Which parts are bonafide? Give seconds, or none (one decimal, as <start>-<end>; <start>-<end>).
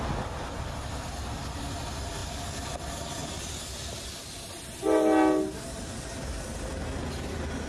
0.0-7.7